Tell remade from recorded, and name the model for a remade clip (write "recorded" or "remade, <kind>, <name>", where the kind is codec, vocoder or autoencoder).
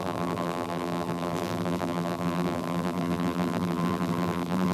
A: remade, vocoder, BigVGAN v2